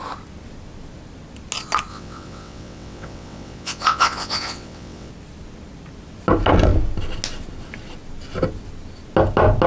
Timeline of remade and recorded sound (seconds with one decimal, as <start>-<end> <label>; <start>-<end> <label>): 0.0-1.9 recorded; 1.9-5.1 remade; 5.1-9.7 recorded